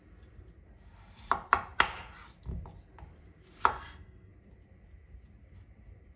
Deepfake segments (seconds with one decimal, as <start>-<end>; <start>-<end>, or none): 3.7-4.3